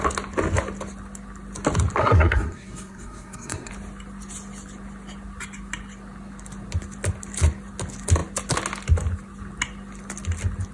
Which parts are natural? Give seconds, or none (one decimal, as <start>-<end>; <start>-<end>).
0.0-2.0; 3.7-10.7

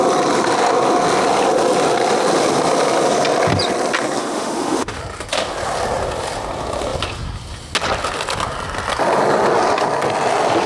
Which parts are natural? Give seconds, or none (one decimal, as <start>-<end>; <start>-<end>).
0.0-4.2; 5.0-10.7

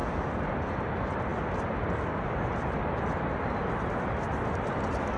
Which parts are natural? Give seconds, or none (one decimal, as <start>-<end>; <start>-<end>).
0.0-0.8; 1.3-2.8

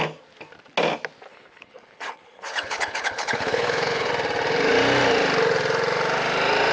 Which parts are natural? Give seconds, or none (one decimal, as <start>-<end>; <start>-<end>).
0.0-1.3; 4.1-6.7